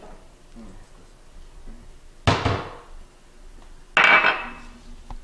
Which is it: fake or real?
real